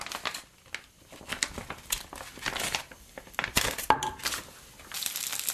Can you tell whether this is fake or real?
real